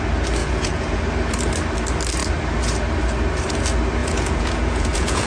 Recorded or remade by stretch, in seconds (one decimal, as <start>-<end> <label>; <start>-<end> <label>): 0.0-0.4 recorded; 0.4-1.0 remade; 1.0-4.0 recorded; 4.0-5.3 remade